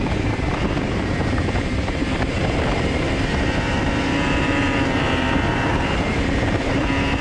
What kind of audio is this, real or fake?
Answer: fake